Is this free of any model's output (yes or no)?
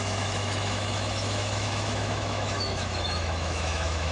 no